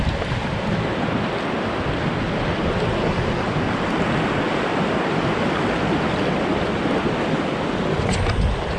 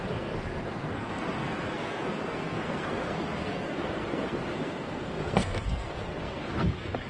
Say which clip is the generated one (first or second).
second